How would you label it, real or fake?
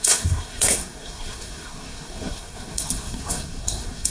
fake